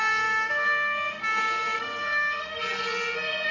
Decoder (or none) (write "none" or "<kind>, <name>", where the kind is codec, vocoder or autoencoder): codec, SNAC